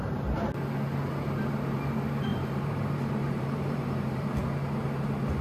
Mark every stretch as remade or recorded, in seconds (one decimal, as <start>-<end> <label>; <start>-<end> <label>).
0.0-2.3 recorded; 2.3-4.4 remade; 4.4-5.4 recorded